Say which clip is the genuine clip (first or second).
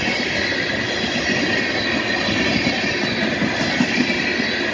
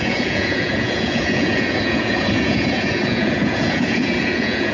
first